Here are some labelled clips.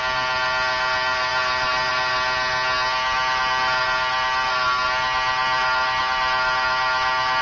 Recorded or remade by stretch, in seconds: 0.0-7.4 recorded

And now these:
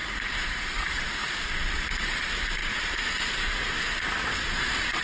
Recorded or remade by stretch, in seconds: 0.0-1.1 remade; 1.1-5.0 recorded

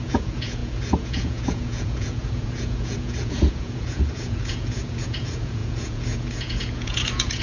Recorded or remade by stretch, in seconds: 0.0-7.4 remade

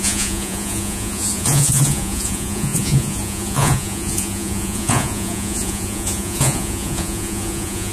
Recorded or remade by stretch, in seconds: 0.0-7.9 remade

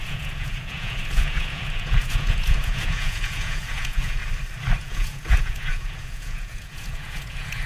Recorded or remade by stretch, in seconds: 0.0-4.2 remade; 4.2-4.8 recorded; 4.8-7.7 remade

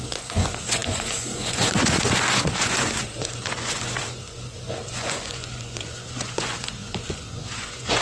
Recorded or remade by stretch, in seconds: 0.0-8.0 remade

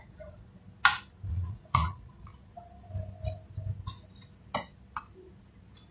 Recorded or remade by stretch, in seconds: 0.0-0.5 remade; 0.5-1.3 recorded; 1.3-2.3 remade; 2.3-5.9 recorded

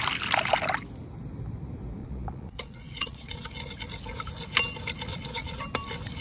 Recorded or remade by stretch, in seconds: 0.0-2.0 recorded; 2.0-3.5 remade; 3.5-5.1 recorded; 5.1-5.6 remade; 5.6-6.2 recorded